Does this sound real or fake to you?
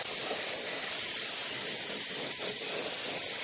real